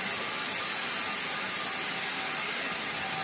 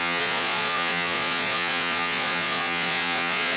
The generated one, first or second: second